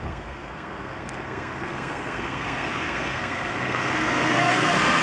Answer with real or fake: fake